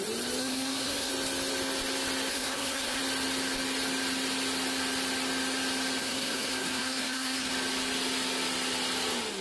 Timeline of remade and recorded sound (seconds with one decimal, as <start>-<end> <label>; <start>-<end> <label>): 0.0-0.4 recorded; 0.4-1.1 remade; 1.1-2.3 recorded; 2.3-3.0 remade; 3.0-6.0 recorded; 6.0-7.5 remade; 7.5-9.4 recorded